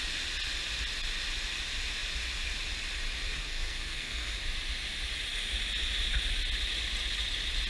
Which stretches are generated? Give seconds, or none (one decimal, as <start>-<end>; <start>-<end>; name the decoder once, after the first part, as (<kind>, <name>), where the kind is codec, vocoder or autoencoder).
3.3-4.4 (codec, SNAC)